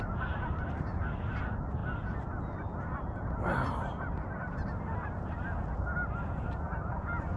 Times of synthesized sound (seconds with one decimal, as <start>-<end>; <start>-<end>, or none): none